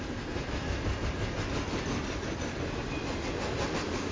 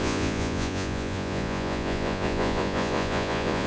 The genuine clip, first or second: first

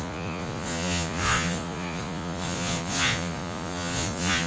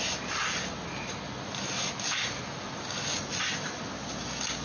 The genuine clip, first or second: second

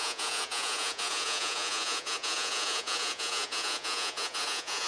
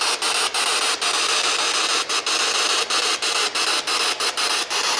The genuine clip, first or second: second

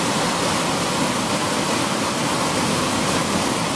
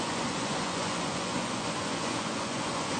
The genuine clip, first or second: first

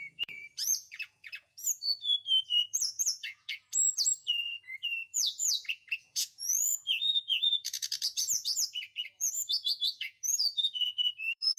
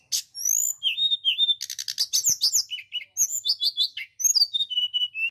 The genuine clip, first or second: second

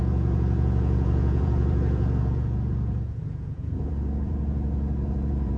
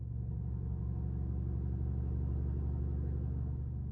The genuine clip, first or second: second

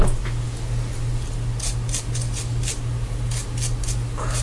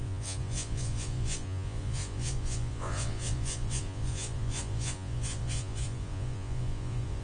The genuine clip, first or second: first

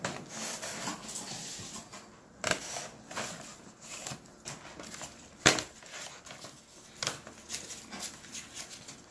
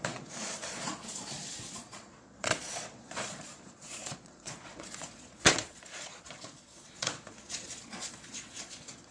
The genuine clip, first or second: first